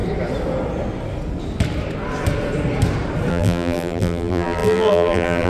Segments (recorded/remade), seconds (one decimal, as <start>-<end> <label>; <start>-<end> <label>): 0.0-3.3 recorded; 3.3-5.5 remade